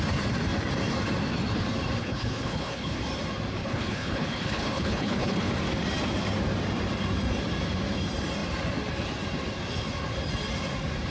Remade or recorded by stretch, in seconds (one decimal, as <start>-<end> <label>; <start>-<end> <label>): 0.0-2.0 recorded; 2.0-3.0 remade; 3.0-3.6 recorded; 3.6-5.5 remade; 5.5-11.1 recorded